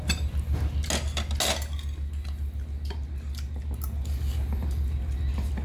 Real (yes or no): yes